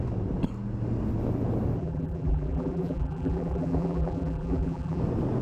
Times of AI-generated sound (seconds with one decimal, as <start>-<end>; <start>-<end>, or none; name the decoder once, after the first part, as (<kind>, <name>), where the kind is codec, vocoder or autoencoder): 1.8-5.0 (vocoder, BigVGAN v2)